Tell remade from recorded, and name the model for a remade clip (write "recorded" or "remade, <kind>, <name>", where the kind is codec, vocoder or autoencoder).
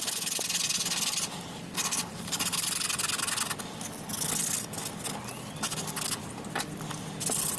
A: recorded